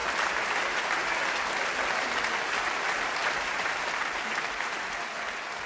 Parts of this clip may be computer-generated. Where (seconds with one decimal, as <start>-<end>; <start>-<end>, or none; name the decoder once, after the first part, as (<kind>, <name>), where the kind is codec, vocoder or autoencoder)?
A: 3.2-4.0 (vocoder, BigVGAN v2)

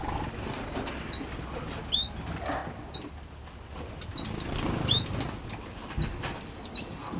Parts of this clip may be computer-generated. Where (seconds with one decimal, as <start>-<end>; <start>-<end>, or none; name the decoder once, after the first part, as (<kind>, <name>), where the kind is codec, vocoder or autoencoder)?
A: none

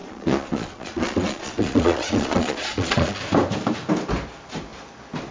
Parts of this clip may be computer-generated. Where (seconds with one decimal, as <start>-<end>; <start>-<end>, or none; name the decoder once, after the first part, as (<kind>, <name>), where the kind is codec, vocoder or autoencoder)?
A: 0.0-3.2 (vocoder, Vocos)

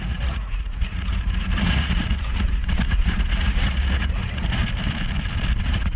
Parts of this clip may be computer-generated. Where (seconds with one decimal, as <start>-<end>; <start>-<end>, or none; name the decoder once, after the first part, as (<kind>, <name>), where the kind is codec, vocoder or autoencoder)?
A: 0.0-4.6 (vocoder, Vocos); 5.6-6.0

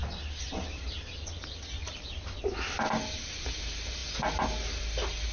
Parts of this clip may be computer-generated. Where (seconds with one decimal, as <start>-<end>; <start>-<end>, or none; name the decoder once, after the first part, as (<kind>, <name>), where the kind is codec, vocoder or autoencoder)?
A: 1.8-2.3 (vocoder, BigVGAN v2)

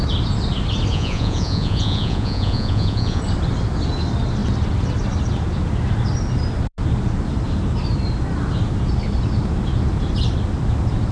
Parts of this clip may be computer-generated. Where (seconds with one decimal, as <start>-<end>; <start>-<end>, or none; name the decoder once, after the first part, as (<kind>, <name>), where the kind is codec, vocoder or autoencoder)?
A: 0.9-3.2 (vocoder, Vocos)

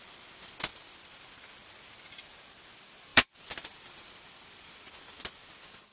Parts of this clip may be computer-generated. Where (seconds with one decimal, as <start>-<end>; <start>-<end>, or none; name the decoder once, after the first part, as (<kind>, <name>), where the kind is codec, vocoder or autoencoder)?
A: 0.7-1.2 (vocoder, BigVGAN v2); 3.1-4.9